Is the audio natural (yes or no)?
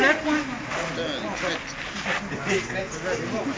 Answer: yes